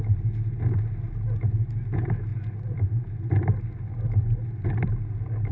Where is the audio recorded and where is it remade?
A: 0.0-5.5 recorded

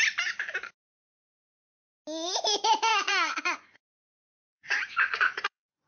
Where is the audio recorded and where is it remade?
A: 0.0-2.9 recorded; 2.9-4.0 remade; 4.0-4.4 recorded; 4.4-5.9 remade

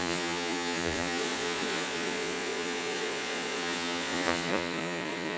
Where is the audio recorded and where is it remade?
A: 0.0-5.4 remade

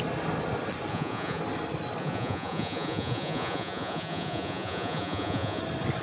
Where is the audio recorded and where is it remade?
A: 0.0-0.9 recorded; 0.9-1.4 remade; 1.4-2.0 recorded; 2.0-5.6 remade; 5.6-6.0 recorded

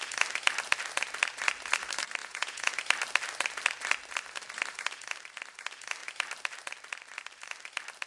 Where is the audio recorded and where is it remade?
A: 0.0-2.2 recorded; 2.2-2.7 remade; 2.7-8.1 recorded

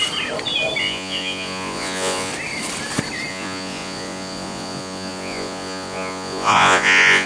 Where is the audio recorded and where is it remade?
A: 0.0-0.8 recorded; 0.8-2.3 remade; 2.3-3.3 recorded; 3.3-7.3 remade

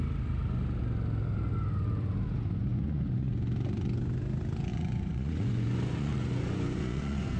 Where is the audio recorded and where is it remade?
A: 0.0-2.6 recorded; 2.6-3.3 remade; 3.3-4.7 recorded; 4.7-7.4 remade

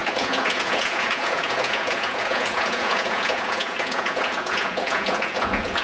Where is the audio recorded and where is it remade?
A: 0.0-5.8 remade